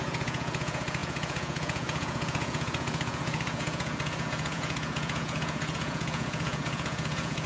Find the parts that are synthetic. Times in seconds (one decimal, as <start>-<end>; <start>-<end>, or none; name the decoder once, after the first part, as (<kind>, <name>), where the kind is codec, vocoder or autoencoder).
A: 0.0-7.5 (vocoder, Vocos)